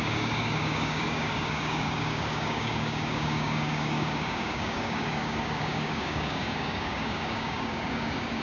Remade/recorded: remade